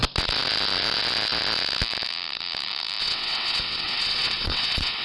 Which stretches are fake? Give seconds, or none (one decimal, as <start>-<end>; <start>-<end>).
3.0-5.0